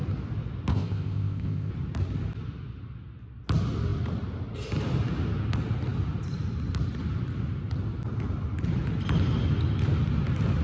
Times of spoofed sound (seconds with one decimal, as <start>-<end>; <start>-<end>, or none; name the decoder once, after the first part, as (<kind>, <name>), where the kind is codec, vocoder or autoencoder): 0.7-1.7 (codec, ZipCodec)